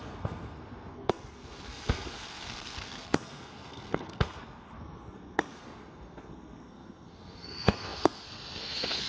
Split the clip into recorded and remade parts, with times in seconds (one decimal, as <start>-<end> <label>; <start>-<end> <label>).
0.0-9.1 remade